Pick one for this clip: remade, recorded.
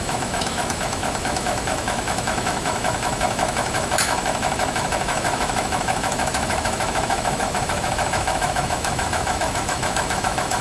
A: remade